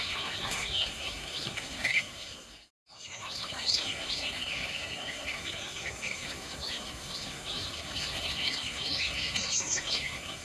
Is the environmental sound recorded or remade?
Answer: remade